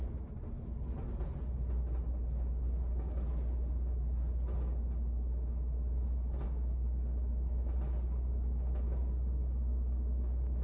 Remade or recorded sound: recorded